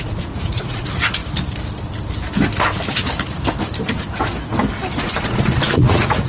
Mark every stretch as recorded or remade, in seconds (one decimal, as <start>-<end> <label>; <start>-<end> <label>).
0.0-1.2 remade; 1.2-5.0 recorded; 5.0-6.3 remade